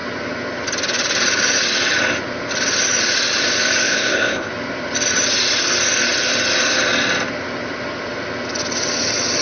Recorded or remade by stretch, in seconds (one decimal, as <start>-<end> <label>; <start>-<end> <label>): 0.0-3.8 recorded; 3.8-4.5 remade; 4.5-9.4 recorded